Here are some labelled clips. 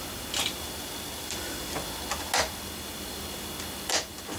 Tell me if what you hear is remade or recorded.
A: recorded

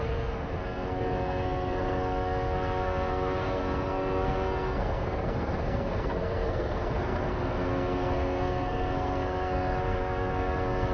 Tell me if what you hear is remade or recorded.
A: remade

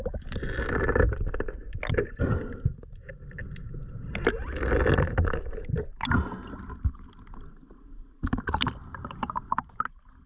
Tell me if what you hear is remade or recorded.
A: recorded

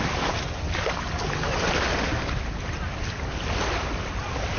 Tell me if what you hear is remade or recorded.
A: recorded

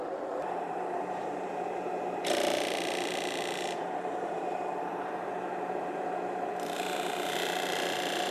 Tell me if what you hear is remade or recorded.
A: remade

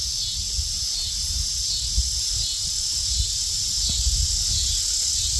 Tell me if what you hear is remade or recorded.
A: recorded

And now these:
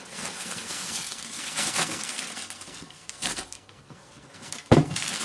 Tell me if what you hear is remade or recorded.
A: remade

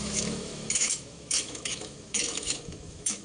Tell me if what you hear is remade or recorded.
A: remade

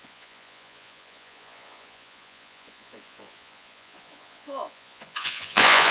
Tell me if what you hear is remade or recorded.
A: remade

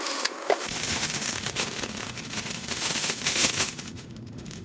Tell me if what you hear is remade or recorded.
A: remade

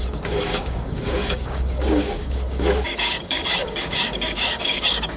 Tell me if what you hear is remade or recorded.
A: remade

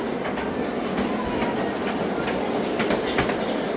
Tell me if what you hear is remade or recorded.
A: recorded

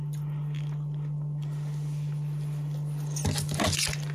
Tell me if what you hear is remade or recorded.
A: recorded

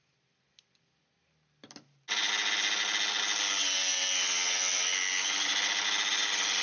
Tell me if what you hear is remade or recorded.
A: recorded